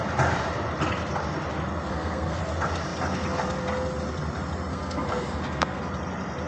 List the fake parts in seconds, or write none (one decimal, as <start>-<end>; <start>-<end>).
1.9-2.4; 4.7-5.8